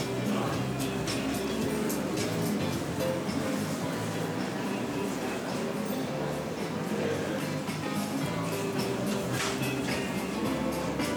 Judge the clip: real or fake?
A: real